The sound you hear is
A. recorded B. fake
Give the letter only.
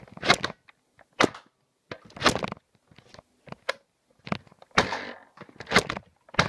A